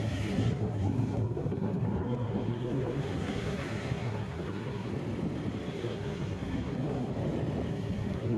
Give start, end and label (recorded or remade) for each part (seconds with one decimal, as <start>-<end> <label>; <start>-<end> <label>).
0.0-4.9 remade; 4.9-5.7 recorded; 5.7-7.1 remade; 7.1-7.7 recorded; 7.7-8.4 remade